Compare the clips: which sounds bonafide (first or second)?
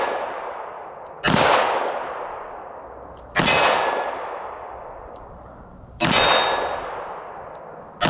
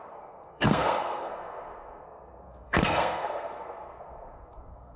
first